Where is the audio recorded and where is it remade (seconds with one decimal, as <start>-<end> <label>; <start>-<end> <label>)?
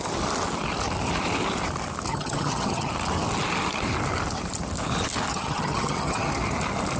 0.0-2.1 recorded; 2.1-2.9 remade; 2.9-5.3 recorded; 5.3-6.3 remade; 6.3-7.0 recorded